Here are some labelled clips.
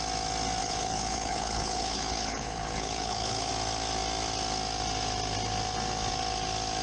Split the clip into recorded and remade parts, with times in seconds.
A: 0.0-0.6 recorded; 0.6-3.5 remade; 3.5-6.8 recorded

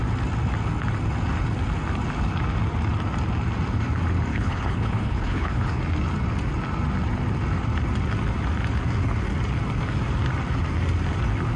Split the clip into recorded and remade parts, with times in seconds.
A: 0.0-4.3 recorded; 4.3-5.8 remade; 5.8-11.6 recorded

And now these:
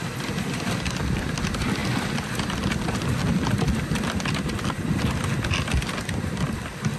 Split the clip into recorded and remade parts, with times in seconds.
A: 0.0-7.0 recorded

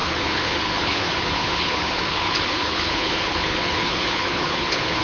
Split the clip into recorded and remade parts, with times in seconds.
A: 0.0-5.0 remade